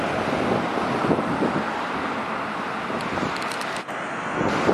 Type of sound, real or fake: real